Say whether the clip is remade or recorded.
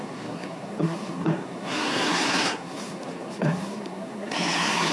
remade